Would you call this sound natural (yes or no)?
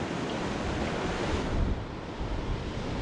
yes